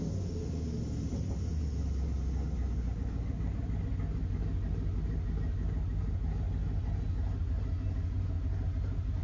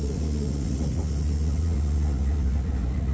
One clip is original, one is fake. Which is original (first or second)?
first